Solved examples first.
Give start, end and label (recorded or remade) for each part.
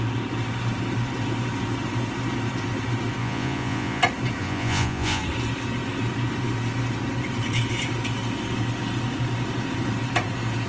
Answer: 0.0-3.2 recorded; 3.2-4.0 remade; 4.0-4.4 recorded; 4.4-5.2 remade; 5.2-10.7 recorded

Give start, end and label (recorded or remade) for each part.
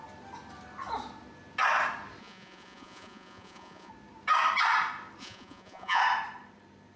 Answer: 0.0-2.2 recorded; 2.2-3.9 remade; 3.9-5.2 recorded; 5.2-6.0 remade; 6.0-7.0 recorded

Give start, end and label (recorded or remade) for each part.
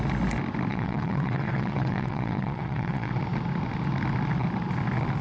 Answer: 0.0-0.7 recorded; 0.7-3.1 remade; 3.1-5.2 recorded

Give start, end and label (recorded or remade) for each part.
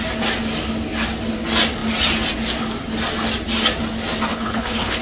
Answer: 0.0-4.3 recorded; 4.3-5.0 remade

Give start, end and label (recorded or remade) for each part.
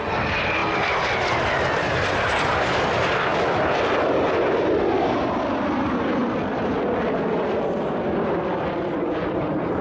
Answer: 0.0-3.3 recorded; 3.3-4.5 remade; 4.5-6.2 recorded; 6.2-9.2 remade; 9.2-9.8 recorded